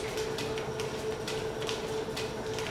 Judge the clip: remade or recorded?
recorded